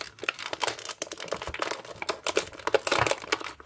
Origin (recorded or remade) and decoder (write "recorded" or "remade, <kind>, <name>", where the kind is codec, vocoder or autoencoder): recorded